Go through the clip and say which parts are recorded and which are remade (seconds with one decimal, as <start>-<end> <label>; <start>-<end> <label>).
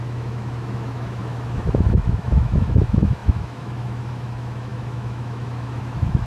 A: 0.0-6.3 remade